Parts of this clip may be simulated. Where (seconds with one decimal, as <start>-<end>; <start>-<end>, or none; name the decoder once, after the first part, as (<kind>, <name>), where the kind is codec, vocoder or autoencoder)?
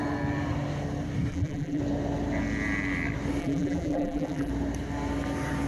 1.3-1.8 (vocoder, BigVGAN v2); 3.4-4.5